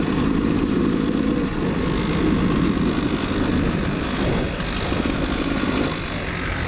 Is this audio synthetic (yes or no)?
no